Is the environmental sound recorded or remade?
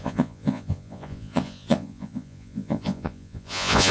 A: remade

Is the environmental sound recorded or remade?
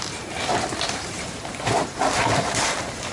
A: recorded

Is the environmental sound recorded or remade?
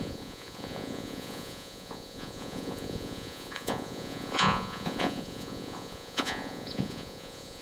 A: remade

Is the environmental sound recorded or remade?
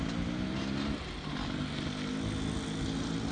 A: recorded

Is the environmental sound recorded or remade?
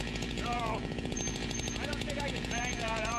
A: remade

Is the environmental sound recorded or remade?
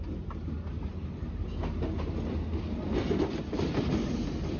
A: recorded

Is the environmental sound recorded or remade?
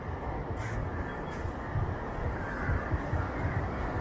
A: recorded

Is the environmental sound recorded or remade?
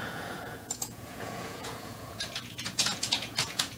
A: remade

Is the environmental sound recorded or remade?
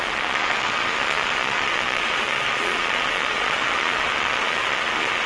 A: remade